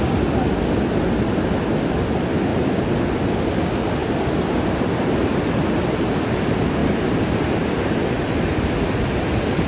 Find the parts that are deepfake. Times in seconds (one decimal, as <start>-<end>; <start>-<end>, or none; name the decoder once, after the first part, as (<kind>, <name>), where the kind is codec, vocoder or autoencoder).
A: 6.8-8.4 (vocoder, BigVGAN v2)